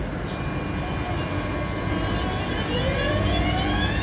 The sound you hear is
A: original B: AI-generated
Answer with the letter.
A